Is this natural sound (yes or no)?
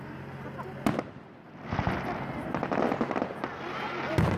yes